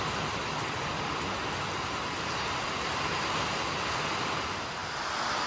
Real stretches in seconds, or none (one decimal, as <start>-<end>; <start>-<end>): 0.0-5.5